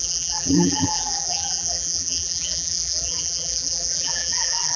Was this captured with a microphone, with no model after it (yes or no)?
no